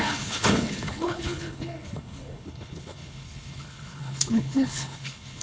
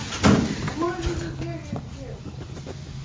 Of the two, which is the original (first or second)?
second